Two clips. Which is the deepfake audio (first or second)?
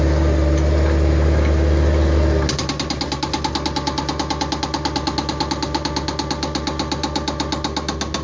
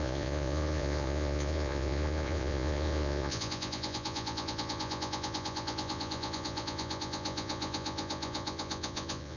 second